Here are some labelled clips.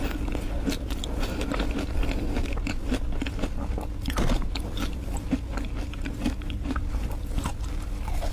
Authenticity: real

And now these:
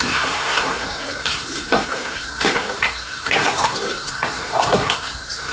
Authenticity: fake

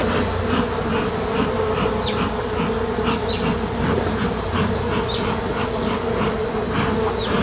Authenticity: real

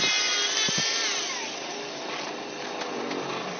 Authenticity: real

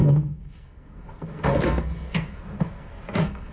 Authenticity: fake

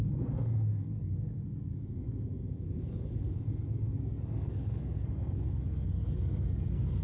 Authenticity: fake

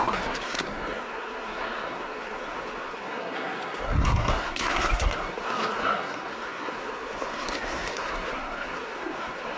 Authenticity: fake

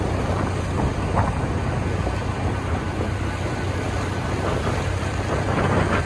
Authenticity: real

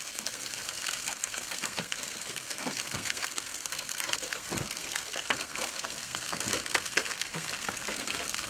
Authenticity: fake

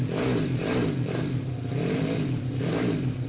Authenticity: real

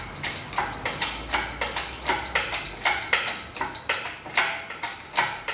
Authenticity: real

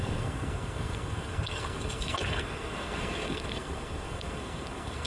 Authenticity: fake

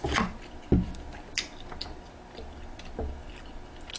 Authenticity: real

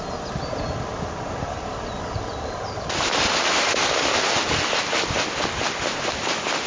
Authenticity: real